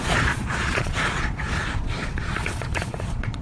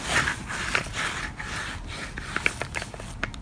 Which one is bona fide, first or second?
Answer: second